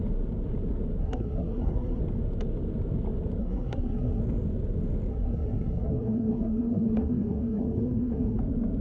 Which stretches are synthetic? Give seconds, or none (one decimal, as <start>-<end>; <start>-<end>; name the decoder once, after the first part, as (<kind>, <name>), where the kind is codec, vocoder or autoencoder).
1.0-2.0 (codec, SNAC); 3.4-4.2; 5.1-8.4